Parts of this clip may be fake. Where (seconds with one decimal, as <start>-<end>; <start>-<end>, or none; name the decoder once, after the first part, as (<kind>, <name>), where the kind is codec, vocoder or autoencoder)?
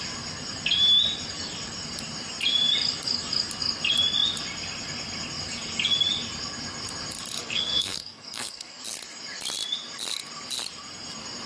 7.4-8.8 (codec, SNAC)